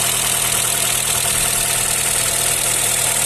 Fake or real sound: real